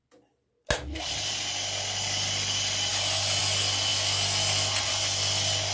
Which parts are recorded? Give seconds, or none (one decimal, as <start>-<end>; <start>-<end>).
0.0-5.7